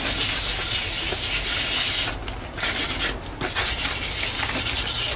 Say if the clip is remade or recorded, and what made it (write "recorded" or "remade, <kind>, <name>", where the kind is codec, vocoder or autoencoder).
recorded